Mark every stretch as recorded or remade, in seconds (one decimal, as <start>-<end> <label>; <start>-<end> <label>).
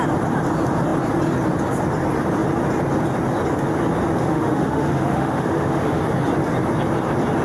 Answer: 0.0-4.2 recorded; 4.2-6.0 remade; 6.0-7.4 recorded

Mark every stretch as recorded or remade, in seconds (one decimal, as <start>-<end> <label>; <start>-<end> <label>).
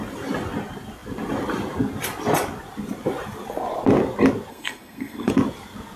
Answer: 0.0-4.5 recorded; 4.5-5.3 remade; 5.3-6.0 recorded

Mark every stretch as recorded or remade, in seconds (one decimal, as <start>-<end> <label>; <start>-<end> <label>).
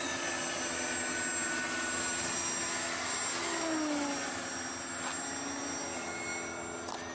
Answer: 0.0-7.1 recorded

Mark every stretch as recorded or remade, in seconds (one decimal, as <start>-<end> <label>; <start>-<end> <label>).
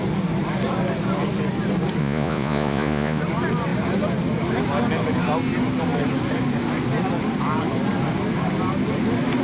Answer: 0.0-2.0 recorded; 2.0-3.2 remade; 3.2-9.4 recorded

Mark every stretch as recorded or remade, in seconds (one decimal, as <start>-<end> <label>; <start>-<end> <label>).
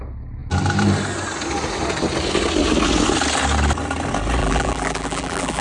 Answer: 0.0-4.4 recorded; 4.4-5.6 remade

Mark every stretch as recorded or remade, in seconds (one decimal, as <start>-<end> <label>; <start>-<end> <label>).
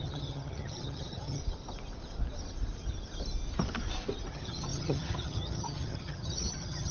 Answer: 0.0-1.4 remade; 1.4-4.3 recorded; 4.3-6.9 remade